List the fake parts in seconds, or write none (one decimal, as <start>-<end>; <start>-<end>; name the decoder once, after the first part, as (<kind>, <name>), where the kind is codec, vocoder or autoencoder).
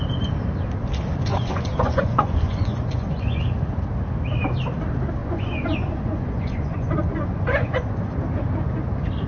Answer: 1.3-3.4 (vocoder, Vocos); 5.2-8.1